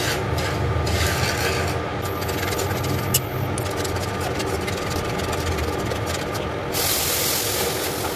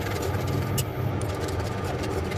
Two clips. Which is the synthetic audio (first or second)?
second